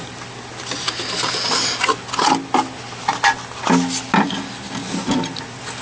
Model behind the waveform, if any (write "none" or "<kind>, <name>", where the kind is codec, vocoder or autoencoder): none